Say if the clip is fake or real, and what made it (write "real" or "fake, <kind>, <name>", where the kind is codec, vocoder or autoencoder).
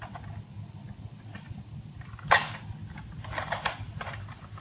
real